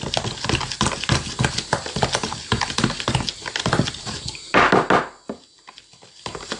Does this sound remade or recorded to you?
recorded